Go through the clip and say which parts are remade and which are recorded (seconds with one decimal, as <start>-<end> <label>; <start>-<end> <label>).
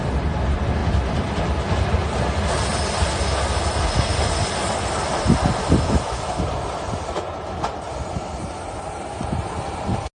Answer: 0.0-10.2 recorded